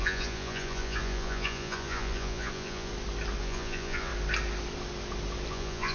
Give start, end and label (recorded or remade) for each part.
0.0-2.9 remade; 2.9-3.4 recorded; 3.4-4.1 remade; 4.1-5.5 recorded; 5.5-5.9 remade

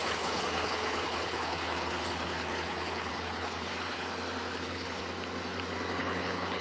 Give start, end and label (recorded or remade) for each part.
0.0-4.1 remade; 4.1-4.6 recorded; 4.6-5.0 remade; 5.0-6.0 recorded; 6.0-6.6 remade